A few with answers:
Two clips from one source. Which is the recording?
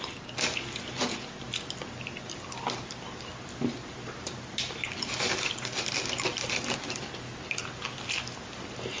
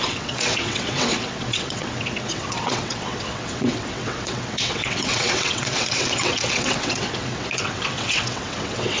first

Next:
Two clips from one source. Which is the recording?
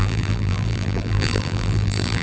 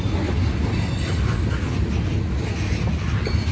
second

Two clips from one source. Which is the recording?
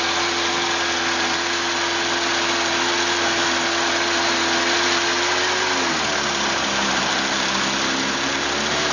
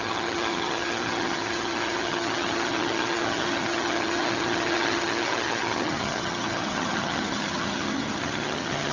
first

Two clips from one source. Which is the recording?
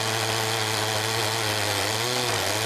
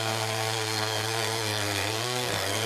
first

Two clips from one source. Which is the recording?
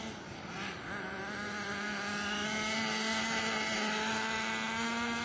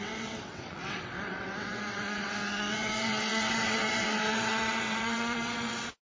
first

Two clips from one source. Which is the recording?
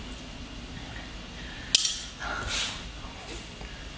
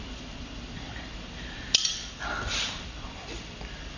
first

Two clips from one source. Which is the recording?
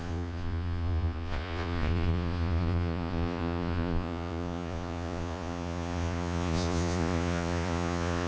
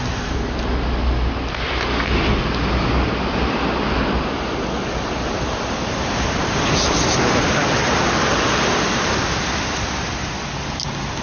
second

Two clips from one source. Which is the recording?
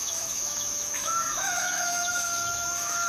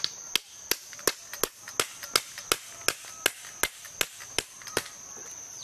second